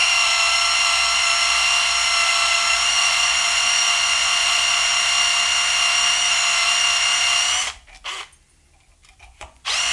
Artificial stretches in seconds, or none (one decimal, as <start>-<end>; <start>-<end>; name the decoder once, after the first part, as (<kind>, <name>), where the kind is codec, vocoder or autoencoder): 2.9-4.9 (vocoder, Vocos); 9.2-9.9